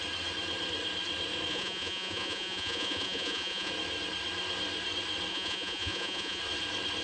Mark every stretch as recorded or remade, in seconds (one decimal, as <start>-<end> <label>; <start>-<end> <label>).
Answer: 0.0-1.5 recorded; 1.5-3.7 remade; 3.7-5.3 recorded; 5.3-6.4 remade; 6.4-7.0 recorded